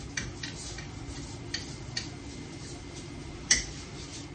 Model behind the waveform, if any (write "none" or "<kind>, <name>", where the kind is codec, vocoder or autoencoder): none